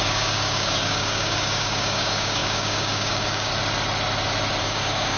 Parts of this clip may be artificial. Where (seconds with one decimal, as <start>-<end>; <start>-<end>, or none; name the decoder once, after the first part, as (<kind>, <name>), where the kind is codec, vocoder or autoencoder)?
0.0-3.5 (codec, DAC); 4.6-5.2